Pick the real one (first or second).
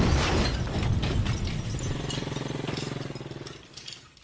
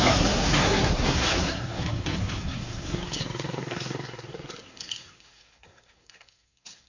first